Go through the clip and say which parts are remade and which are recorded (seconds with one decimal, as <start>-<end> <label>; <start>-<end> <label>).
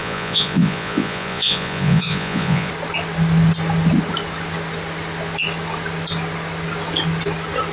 0.0-2.7 remade; 2.7-7.7 recorded